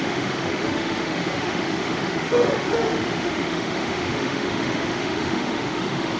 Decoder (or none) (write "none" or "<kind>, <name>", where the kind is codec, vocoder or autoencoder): autoencoder, DAC-VAE